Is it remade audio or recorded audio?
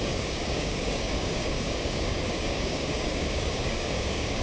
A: remade